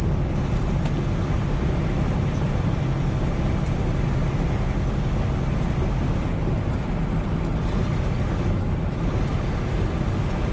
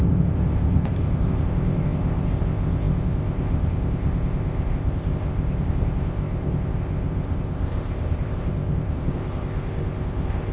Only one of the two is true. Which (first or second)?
first